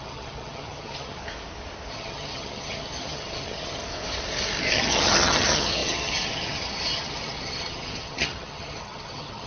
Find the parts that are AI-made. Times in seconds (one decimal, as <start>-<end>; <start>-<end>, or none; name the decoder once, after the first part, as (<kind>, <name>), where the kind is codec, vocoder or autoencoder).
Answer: 0.0-1.2 (vocoder, HiFi-GAN); 1.9-3.8; 4.6-9.5